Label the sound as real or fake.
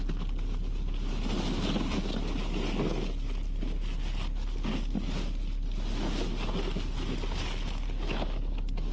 real